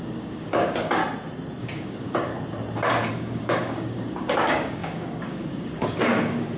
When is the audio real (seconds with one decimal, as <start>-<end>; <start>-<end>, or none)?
1.0-1.6; 2.3-3.1